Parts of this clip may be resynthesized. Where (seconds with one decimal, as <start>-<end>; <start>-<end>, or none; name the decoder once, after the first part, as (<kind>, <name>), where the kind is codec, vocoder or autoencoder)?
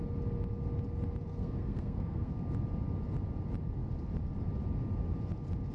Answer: 1.3-2.3 (codec, SNAC)